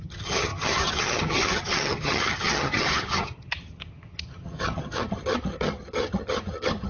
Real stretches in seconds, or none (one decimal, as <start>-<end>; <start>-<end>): none